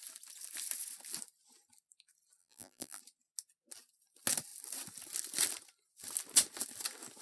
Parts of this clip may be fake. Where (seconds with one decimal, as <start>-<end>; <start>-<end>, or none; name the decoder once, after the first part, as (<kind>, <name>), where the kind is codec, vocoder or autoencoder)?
2.4-3.0 (vocoder, BigVGAN v2)